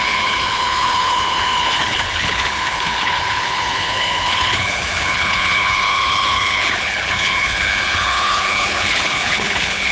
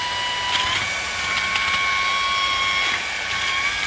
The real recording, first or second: second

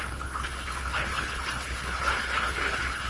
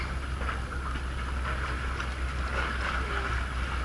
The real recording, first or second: second